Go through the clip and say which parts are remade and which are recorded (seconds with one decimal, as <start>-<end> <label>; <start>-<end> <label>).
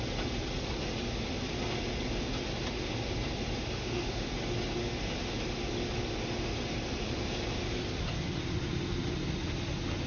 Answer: 0.0-3.8 recorded; 3.8-4.3 remade; 4.3-10.1 recorded